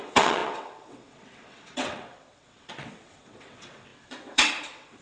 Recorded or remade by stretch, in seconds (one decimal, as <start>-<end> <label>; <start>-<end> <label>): 0.0-5.0 remade